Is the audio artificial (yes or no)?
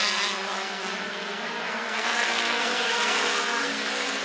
yes